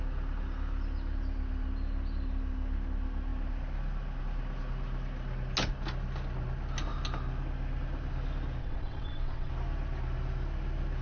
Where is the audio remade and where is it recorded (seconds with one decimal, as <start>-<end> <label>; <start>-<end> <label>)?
0.0-8.6 recorded; 8.6-9.5 remade; 9.5-11.0 recorded